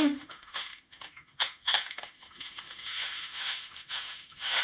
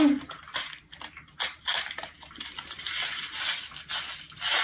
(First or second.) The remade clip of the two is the first